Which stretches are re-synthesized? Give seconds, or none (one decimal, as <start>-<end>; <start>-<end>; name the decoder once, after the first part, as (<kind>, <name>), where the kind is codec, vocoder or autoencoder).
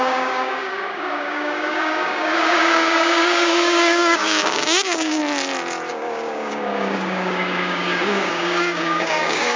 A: 0.0-5.2 (codec, DAC); 5.9-9.6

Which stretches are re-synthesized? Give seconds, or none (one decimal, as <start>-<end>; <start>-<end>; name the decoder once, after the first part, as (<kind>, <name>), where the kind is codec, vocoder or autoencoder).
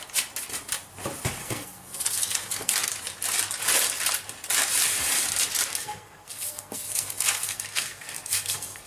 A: 1.4-2.9 (codec, SNAC); 5.7-8.9